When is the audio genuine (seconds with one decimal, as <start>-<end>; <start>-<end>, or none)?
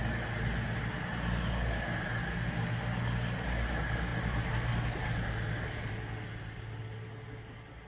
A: 0.0-7.9